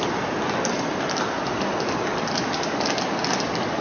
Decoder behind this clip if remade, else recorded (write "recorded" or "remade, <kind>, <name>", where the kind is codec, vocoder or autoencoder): recorded